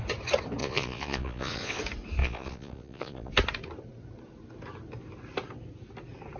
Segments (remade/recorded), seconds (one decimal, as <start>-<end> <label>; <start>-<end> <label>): 0.0-0.6 recorded; 0.6-1.8 remade; 1.8-2.2 recorded; 2.2-3.3 remade; 3.3-6.4 recorded